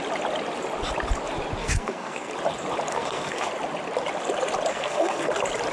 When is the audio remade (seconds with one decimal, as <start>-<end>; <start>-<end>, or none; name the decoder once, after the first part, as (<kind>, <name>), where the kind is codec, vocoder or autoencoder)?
1.6-2.3 (codec, SNAC); 2.9-3.5; 4.7-5.3